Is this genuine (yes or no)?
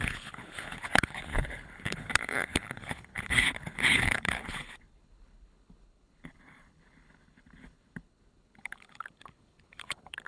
no